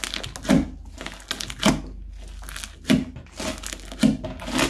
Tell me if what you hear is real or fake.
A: real